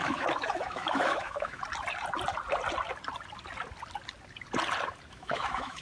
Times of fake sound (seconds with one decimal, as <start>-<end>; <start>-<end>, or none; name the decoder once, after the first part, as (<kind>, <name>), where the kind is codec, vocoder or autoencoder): 0.0-1.6 (autoencoder, DAC-VAE); 5.1-5.8